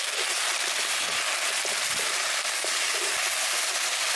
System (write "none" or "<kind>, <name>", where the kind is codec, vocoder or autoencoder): none